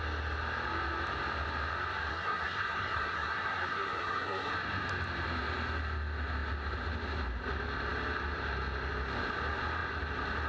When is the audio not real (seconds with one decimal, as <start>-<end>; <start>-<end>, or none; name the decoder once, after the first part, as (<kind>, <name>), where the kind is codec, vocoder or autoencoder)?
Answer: 2.1-4.5 (codec, SNAC)